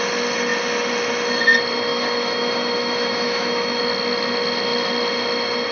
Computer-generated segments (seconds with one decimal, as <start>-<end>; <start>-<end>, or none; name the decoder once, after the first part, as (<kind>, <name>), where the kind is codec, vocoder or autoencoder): 1.9-3.8 (autoencoder, DAC-VAE)